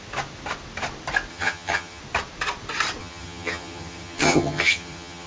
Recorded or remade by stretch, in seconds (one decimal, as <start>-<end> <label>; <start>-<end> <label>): 0.0-1.3 recorded; 1.3-2.0 remade; 2.0-3.0 recorded; 3.0-5.3 remade